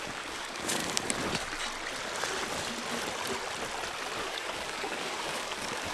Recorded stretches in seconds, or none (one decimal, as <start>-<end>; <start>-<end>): 0.8-4.2